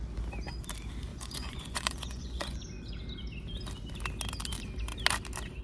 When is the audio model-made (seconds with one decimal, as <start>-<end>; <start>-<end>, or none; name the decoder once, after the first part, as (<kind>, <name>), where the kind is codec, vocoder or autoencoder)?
1.1-2.6 (vocoder, Vocos)